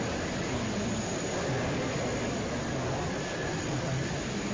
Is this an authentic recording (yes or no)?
no